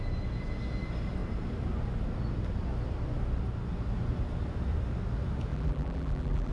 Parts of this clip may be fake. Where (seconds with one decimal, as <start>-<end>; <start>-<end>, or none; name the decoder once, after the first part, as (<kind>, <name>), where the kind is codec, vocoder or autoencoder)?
5.5-6.5 (vocoder, BigVGAN v2)

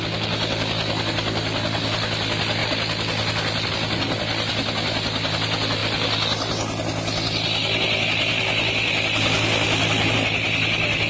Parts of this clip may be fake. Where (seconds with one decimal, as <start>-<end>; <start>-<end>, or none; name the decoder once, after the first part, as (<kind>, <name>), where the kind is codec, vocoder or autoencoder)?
none

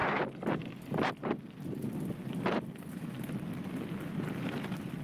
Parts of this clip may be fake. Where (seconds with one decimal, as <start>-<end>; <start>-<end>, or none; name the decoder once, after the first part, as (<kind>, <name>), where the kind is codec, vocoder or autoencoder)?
none

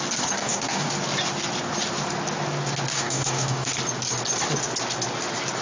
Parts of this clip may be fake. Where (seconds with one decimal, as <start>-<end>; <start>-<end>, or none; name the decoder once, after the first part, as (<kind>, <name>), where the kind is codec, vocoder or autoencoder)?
0.4-0.9 (codec, DAC); 2.9-3.7